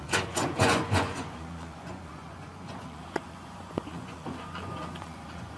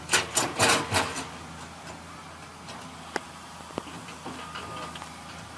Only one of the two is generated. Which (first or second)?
first